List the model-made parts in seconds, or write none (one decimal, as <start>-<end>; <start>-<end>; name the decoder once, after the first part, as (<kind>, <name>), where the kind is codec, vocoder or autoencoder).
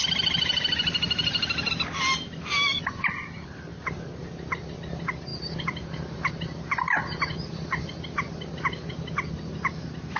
none